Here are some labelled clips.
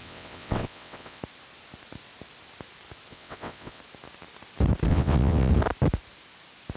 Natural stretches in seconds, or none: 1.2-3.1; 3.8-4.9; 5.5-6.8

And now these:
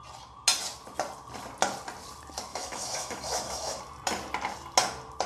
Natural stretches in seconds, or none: 0.0-2.5; 3.8-5.3

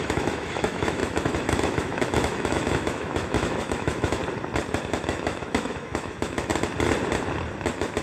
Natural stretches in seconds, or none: 4.2-4.9; 6.5-8.0

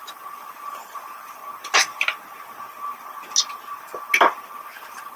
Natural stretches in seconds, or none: 1.4-4.5

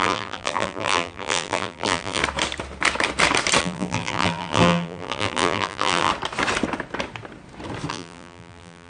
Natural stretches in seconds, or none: 2.2-3.6; 6.1-7.9

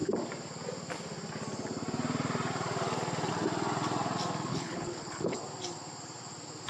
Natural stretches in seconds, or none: 0.0-4.5; 5.4-6.7

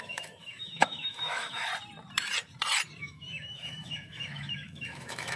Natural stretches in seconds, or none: 1.7-3.0

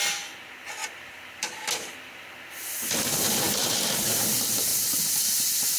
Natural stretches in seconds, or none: 0.0-0.8; 3.7-4.7